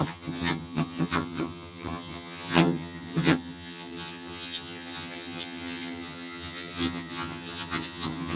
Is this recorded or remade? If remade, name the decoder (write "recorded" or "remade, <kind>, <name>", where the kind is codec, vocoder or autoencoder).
remade, vocoder, HiFi-GAN